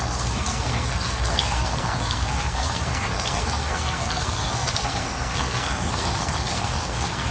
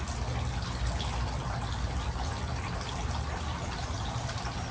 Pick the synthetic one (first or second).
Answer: first